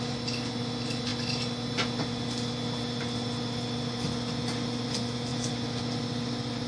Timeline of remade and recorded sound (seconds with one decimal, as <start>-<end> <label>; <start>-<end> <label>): 0.0-6.7 recorded